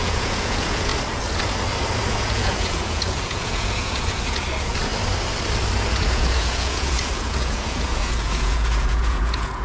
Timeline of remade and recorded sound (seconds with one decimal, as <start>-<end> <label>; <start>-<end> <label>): 0.0-0.9 remade; 0.9-2.1 recorded; 2.1-4.9 remade; 4.9-6.0 recorded; 6.0-9.6 remade